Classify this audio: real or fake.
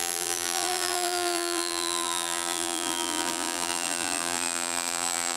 fake